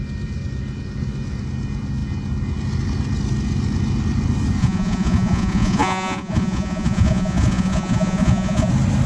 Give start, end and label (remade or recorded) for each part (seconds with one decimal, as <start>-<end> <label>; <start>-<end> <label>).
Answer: 0.0-4.6 recorded; 4.6-8.7 remade; 8.7-9.1 recorded